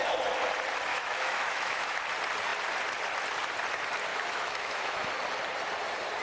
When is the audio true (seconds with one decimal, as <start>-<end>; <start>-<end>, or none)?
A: 0.0-0.9; 2.0-4.1; 5.1-6.2